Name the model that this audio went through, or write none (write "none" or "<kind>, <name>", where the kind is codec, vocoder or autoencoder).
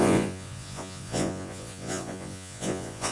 vocoder, Vocos